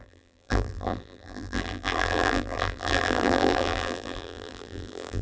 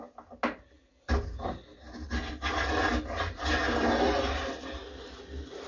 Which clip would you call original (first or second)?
second